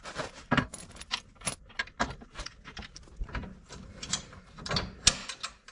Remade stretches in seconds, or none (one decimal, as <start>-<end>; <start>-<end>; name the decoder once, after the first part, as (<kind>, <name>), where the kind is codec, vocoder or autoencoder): 0.4-1.6 (vocoder, BigVGAN v2); 3.3-4.6